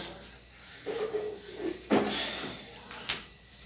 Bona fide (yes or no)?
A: yes